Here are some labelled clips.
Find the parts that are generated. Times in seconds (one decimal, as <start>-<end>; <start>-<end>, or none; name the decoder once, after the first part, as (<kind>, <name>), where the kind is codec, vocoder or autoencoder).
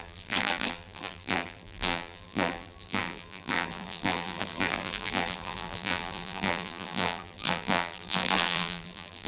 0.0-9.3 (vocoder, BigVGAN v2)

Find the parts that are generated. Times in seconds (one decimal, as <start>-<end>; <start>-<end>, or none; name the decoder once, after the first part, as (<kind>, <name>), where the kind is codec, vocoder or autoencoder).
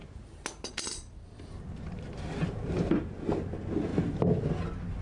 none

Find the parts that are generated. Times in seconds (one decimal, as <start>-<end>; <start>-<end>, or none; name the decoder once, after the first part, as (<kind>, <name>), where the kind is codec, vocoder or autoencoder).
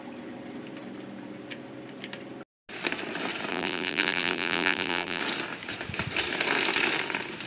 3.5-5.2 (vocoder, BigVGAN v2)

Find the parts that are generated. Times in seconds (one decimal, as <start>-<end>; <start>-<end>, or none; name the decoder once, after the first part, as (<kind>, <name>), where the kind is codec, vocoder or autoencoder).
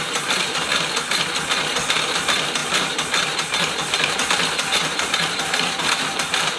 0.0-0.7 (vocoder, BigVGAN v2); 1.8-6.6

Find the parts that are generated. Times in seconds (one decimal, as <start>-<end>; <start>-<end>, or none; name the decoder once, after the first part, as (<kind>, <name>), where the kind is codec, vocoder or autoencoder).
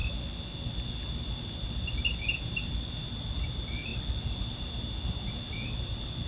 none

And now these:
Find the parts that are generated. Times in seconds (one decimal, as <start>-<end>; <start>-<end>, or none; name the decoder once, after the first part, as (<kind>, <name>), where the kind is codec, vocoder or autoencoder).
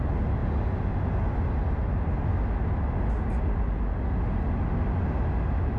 none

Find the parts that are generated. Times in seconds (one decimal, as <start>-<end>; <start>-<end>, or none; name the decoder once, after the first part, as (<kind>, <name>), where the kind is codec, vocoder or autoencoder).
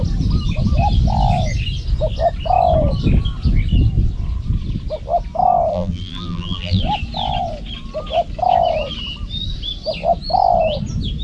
5.7-6.8 (vocoder, BigVGAN v2)